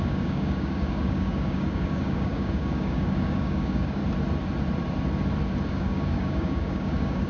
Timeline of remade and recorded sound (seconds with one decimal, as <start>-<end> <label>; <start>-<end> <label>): 0.0-4.0 remade; 4.0-5.7 recorded; 5.7-7.3 remade